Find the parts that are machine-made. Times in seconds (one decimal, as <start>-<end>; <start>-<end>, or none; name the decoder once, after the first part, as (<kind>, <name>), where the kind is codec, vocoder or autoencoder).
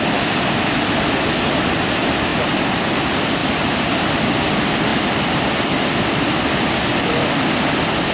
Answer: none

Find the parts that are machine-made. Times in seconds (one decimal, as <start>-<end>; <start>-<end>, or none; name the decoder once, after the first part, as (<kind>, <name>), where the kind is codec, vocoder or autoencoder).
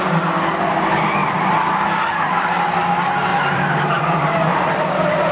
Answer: 1.2-2.1 (vocoder, BigVGAN v2); 3.3-4.5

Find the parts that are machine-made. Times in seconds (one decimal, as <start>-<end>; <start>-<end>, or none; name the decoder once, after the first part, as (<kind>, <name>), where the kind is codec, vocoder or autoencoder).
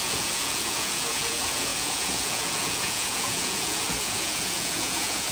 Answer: 0.0-5.3 (vocoder, Vocos)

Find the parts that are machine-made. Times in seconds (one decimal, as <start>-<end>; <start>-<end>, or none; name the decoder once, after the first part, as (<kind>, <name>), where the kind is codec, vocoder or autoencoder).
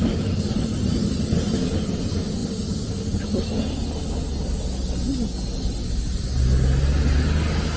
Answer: none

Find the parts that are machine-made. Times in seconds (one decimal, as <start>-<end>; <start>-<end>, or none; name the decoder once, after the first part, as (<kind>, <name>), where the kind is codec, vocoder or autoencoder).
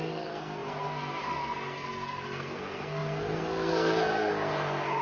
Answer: 0.0-5.0 (codec, SNAC)